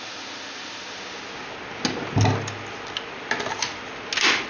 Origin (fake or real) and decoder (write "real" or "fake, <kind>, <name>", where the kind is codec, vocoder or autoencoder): real